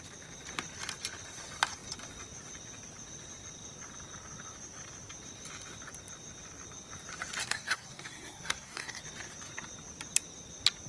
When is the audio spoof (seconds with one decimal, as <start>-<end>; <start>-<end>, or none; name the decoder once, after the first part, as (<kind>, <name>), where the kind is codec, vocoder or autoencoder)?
7.4-9.0 (codec, SNAC)